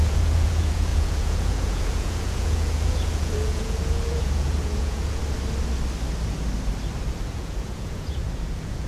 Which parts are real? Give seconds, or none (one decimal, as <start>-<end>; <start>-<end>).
5.2-7.3